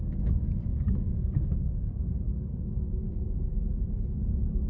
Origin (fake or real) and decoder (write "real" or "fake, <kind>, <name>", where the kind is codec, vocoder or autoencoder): fake, codec, DAC